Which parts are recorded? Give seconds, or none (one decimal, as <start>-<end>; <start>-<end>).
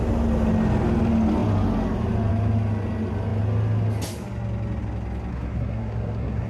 0.0-5.3